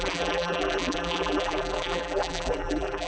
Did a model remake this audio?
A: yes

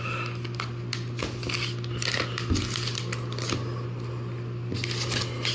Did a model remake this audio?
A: no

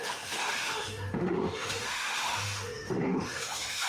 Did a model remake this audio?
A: yes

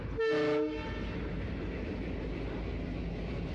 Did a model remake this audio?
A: no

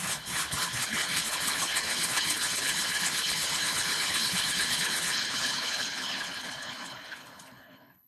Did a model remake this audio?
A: yes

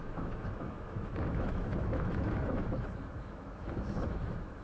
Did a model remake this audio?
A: yes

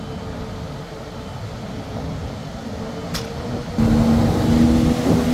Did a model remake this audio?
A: no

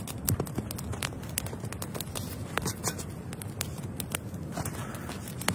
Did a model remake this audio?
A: no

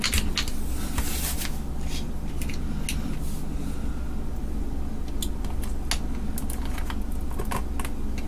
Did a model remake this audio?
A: no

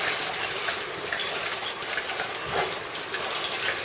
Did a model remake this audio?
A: no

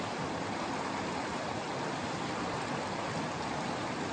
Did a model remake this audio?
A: no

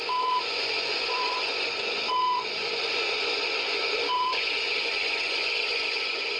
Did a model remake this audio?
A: yes